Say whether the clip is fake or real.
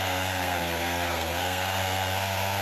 fake